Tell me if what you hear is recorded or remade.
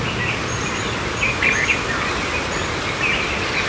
recorded